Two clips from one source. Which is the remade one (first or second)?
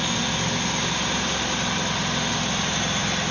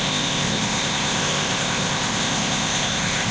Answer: second